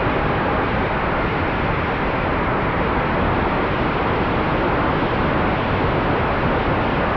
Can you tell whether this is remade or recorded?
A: recorded